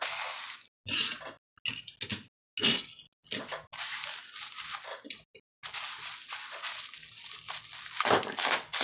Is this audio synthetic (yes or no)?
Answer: no